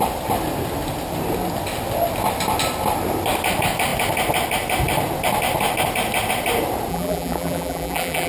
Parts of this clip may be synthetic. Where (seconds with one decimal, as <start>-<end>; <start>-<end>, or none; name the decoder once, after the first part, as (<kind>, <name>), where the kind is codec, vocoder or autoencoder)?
6.9-8.3 (vocoder, BigVGAN v2)